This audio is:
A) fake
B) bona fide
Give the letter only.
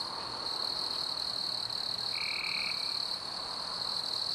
B